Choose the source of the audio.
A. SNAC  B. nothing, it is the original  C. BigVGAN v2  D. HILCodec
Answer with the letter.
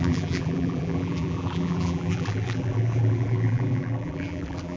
C